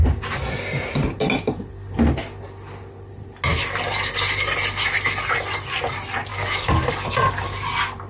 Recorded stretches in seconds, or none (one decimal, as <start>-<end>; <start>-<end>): 0.0-6.3; 6.9-8.1